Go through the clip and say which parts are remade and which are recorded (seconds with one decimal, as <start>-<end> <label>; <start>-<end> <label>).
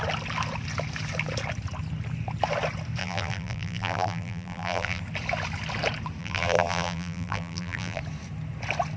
0.0-3.0 recorded; 3.0-5.0 remade; 5.0-6.2 recorded; 6.2-8.0 remade; 8.0-9.0 recorded